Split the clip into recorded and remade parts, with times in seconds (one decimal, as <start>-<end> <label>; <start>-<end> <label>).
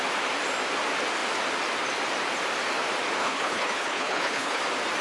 0.0-3.2 recorded; 3.2-4.6 remade; 4.6-5.0 recorded